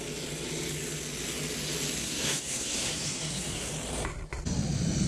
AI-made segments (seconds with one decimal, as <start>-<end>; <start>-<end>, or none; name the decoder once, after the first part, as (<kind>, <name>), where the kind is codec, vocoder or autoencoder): 2.0-3.7 (codec, SNAC)